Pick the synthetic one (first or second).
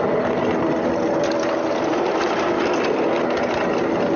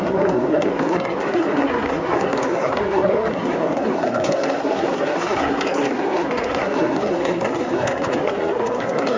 second